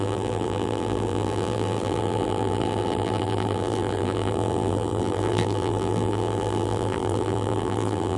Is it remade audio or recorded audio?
remade